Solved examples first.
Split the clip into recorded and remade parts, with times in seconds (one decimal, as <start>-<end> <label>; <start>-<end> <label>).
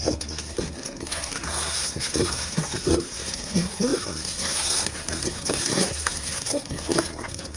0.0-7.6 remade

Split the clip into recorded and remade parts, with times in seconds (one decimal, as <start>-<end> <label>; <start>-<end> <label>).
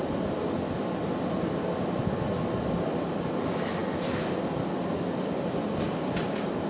0.0-6.7 recorded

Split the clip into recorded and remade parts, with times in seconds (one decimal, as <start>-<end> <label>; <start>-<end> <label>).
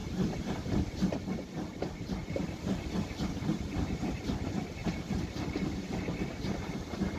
0.0-0.7 remade; 0.7-2.2 recorded; 2.2-4.2 remade; 4.2-4.8 recorded; 4.8-7.2 remade